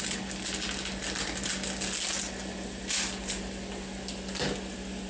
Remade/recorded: recorded